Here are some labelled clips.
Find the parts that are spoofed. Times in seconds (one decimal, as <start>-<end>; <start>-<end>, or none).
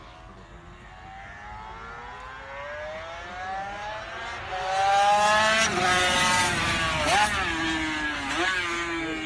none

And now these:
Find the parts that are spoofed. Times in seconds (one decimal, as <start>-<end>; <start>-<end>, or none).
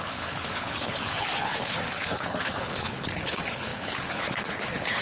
0.0-5.0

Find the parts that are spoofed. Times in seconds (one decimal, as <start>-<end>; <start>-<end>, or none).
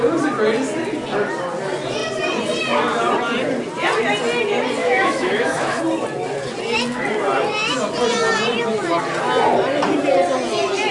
4.8-5.8